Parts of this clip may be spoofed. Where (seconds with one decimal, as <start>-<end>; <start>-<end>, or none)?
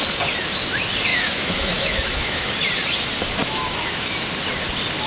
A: 1.1-2.5; 3.4-4.1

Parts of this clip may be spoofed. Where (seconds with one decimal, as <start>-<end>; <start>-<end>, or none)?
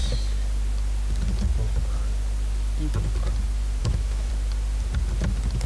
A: 3.8-4.3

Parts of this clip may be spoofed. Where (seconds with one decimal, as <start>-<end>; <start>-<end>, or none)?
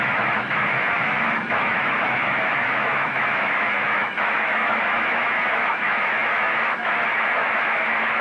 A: 0.0-8.2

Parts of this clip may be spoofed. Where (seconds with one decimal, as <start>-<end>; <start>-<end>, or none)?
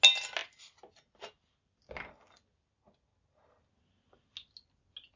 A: none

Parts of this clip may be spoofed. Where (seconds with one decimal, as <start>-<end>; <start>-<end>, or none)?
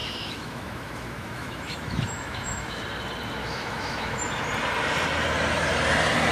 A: 0.0-2.8; 3.4-4.2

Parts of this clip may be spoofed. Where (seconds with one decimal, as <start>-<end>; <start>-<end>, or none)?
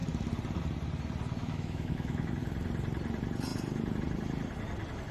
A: 1.4-2.3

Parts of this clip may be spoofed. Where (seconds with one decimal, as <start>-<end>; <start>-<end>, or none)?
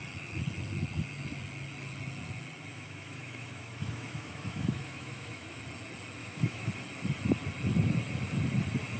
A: 2.7-5.6; 6.2-6.7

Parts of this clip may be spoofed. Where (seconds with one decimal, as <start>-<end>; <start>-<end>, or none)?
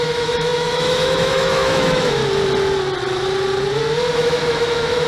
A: 0.0-2.2; 4.1-5.1